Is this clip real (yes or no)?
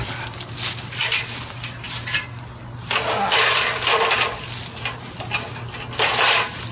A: yes